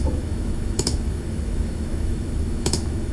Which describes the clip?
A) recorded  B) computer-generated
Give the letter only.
B